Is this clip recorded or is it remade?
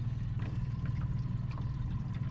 recorded